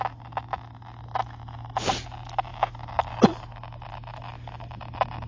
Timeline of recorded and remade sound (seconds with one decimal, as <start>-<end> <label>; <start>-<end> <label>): 0.0-5.3 recorded